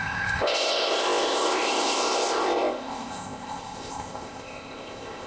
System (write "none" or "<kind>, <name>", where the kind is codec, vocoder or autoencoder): codec, ZipCodec